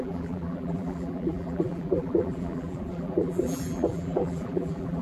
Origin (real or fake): fake